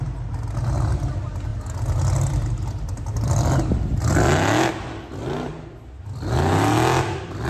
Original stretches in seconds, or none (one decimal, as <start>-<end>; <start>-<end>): 0.0-7.5